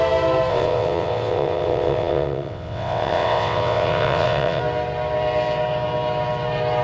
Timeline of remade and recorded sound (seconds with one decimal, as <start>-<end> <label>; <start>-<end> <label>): 0.0-0.5 recorded; 0.5-4.6 remade; 4.6-6.8 recorded